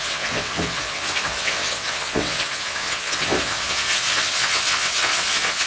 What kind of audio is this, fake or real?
fake